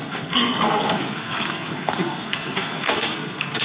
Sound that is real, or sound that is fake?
fake